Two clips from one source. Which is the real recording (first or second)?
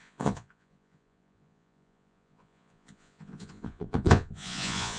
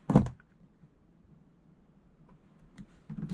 second